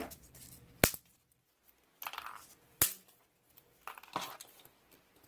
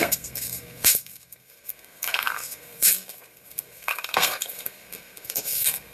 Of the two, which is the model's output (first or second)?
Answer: second